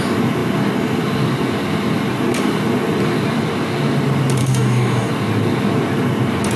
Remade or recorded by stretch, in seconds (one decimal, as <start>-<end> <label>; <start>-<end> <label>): 0.0-4.4 recorded; 4.4-5.1 remade; 5.1-6.6 recorded